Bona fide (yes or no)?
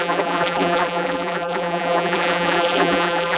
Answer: no